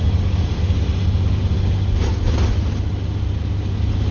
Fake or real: real